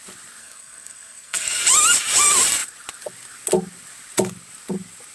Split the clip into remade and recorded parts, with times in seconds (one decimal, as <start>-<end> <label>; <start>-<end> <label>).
0.0-0.4 recorded; 0.4-1.6 remade; 1.6-5.1 recorded